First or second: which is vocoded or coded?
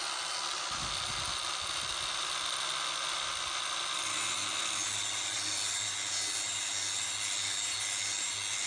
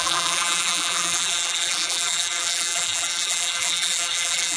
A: second